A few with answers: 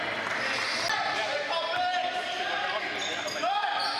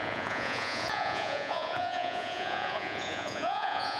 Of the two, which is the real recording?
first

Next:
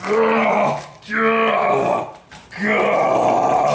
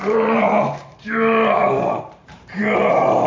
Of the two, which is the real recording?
first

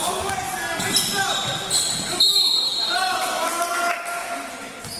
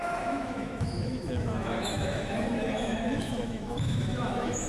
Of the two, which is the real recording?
first